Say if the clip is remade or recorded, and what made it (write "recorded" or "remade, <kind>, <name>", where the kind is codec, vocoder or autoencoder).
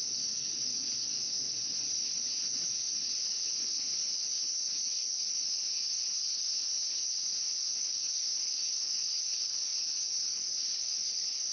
remade, codec, HILCodec